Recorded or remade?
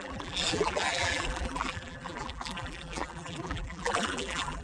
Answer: remade